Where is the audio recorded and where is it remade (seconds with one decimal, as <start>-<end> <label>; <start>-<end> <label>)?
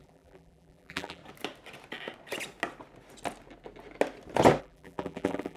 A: 0.0-1.2 remade; 1.2-4.6 recorded; 4.6-5.6 remade